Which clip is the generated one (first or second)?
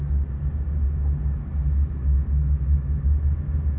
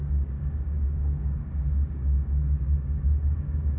second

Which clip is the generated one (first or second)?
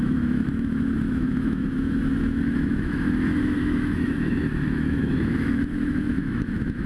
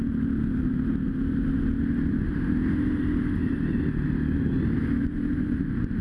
first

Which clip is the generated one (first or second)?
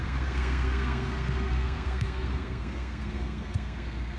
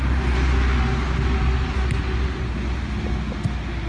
first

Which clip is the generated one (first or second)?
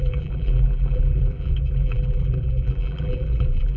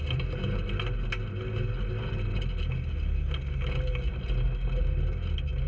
first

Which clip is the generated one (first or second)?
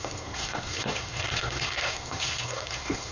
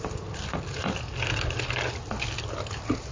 first